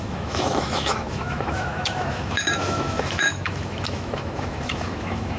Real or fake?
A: fake